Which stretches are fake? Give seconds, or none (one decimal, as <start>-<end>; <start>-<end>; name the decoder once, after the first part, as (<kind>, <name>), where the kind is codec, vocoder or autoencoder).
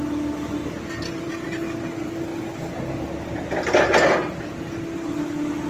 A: 0.6-1.3 (vocoder, BigVGAN v2)